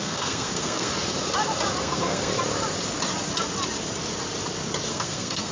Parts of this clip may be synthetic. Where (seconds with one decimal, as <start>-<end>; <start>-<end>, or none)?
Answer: 0.0-0.9; 1.8-2.3; 4.9-5.5